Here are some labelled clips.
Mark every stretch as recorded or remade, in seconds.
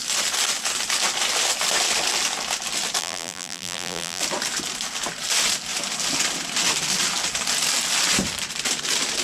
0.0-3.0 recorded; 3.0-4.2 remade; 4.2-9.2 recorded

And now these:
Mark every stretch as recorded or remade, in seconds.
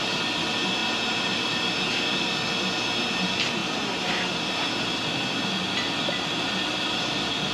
0.0-7.5 recorded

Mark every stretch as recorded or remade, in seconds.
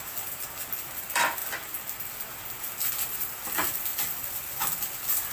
0.0-5.3 remade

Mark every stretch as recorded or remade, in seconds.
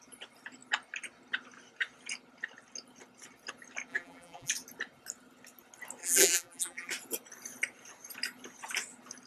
0.0-3.9 recorded; 3.9-4.5 remade; 4.5-6.0 recorded; 6.0-6.9 remade; 6.9-9.3 recorded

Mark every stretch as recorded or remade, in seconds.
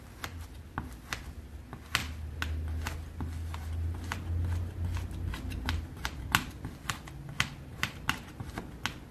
0.0-7.7 recorded; 7.7-8.4 remade; 8.4-9.1 recorded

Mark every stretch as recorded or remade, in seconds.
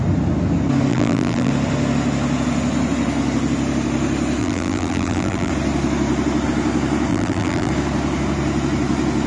0.0-0.9 recorded; 0.9-1.5 remade; 1.5-4.4 recorded; 4.4-5.5 remade; 5.5-7.1 recorded; 7.1-7.7 remade; 7.7-9.3 recorded